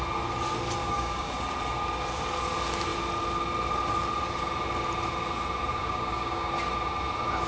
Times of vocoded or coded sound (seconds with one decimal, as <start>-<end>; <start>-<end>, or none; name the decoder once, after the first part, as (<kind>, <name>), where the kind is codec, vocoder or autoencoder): 0.8-1.4 (codec, DAC); 5.7-6.5